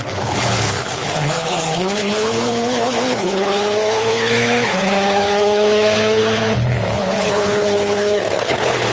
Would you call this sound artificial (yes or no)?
yes